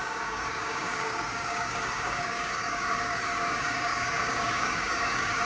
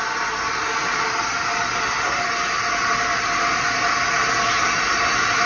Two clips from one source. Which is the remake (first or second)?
first